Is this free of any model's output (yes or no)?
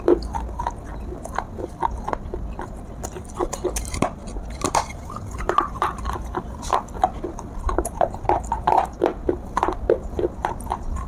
no